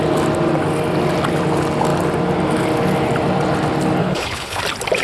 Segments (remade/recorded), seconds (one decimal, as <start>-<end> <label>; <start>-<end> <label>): 0.0-4.0 recorded; 4.0-4.6 remade; 4.6-5.0 recorded